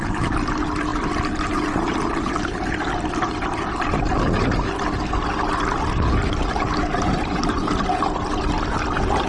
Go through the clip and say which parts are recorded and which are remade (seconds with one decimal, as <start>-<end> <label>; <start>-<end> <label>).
0.0-9.3 recorded